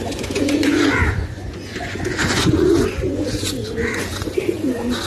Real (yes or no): no